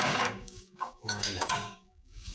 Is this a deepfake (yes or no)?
yes